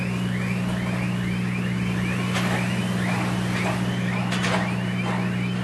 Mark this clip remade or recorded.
recorded